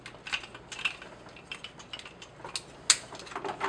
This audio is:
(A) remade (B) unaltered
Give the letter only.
B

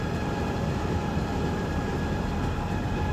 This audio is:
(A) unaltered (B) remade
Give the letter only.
B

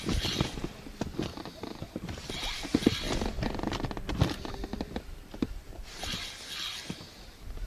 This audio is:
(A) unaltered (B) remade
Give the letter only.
A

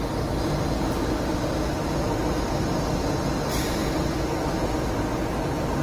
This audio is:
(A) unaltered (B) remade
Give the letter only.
A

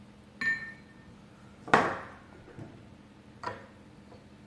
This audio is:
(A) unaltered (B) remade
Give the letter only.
A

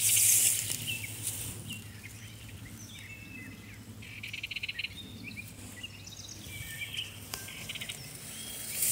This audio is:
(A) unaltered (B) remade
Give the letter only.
A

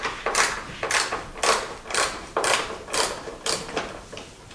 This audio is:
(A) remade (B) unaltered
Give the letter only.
A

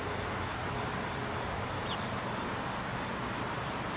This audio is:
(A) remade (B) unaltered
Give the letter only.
B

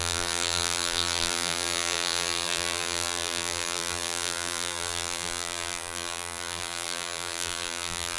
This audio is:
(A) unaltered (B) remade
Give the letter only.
B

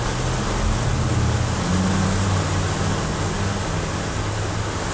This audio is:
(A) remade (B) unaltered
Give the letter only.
B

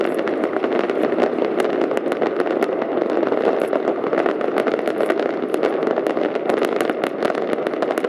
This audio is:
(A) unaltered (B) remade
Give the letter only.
A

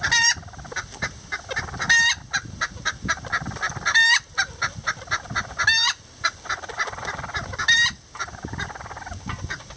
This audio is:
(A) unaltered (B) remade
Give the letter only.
A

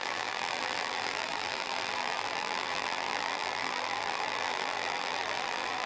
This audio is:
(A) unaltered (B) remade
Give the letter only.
B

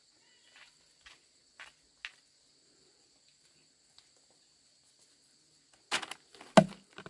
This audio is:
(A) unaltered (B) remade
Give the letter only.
A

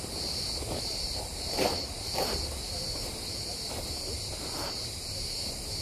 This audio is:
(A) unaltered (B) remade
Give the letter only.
B